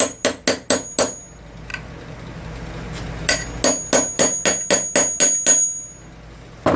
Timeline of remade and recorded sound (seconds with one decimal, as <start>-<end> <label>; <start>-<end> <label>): 0.0-6.8 recorded